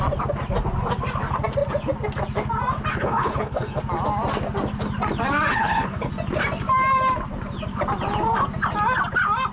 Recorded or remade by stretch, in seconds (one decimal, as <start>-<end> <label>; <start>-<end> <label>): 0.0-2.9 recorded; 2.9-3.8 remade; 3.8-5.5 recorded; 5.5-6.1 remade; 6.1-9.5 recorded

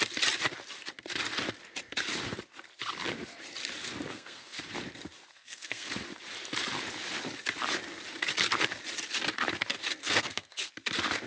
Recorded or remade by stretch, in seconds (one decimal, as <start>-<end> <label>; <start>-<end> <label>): 0.0-4.1 recorded; 4.1-4.6 remade; 4.6-5.3 recorded; 5.3-5.9 remade; 5.9-10.0 recorded; 10.0-10.7 remade; 10.7-11.3 recorded

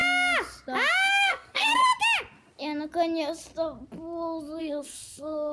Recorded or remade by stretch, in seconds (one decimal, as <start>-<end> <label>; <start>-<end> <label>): 0.0-1.1 recorded; 1.1-1.8 remade; 1.8-4.6 recorded; 4.6-5.5 remade

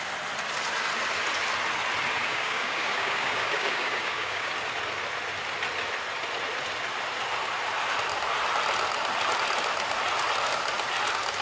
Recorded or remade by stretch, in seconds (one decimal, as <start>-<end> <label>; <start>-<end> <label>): 0.0-2.2 recorded; 2.2-4.5 remade; 4.5-11.4 recorded

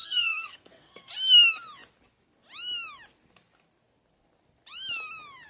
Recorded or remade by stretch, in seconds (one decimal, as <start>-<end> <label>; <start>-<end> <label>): 0.0-1.1 remade; 1.1-5.5 recorded

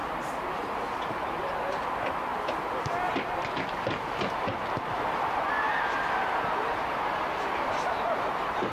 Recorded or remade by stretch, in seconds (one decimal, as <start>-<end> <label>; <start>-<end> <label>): 0.0-0.7 recorded; 0.7-2.3 remade; 2.3-7.5 recorded; 7.5-8.7 remade

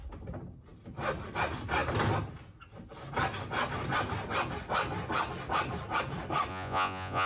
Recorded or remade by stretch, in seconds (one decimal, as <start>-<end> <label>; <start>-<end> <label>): 0.0-6.5 recorded; 6.5-7.3 remade